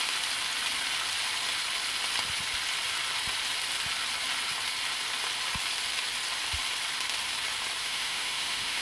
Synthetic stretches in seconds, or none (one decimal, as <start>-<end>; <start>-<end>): 7.8-8.8